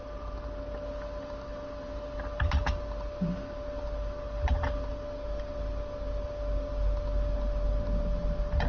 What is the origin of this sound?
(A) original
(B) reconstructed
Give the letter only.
A